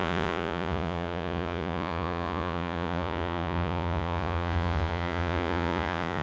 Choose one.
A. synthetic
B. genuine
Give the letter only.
A